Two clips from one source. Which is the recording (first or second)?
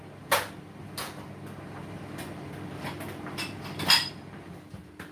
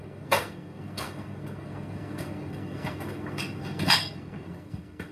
first